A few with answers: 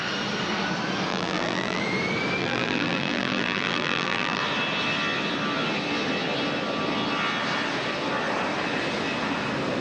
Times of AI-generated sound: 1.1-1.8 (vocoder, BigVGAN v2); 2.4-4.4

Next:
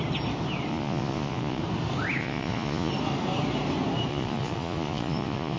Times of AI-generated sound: 0.7-1.6 (vocoder, Vocos); 2.2-2.9; 4.1-5.6

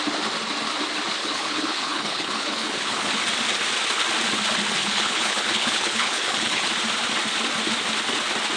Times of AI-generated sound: 1.2-3.2 (codec, HILCodec); 4.8-6.7

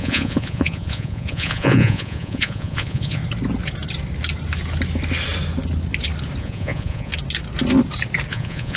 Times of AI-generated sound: 0.0-3.2 (vocoder, Vocos); 6.4-7.1; 8.3-8.8

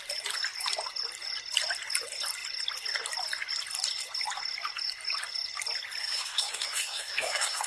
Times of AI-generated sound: 6.0-7.7 (codec, SNAC)

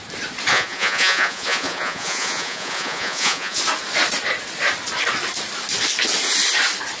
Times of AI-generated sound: 0.5-3.6 (vocoder, Vocos)

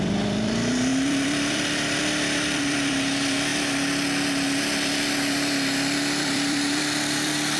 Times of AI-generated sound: 0.0-3.5 (vocoder, BigVGAN v2); 6.2-7.6

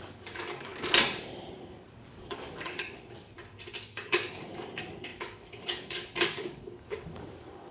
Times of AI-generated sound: 0.0-0.7 (codec, DAC); 1.6-3.3; 3.8-7.7